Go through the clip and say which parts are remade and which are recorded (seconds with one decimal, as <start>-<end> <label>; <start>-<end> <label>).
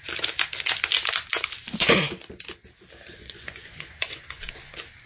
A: 0.0-3.2 recorded; 3.2-4.5 remade; 4.5-5.1 recorded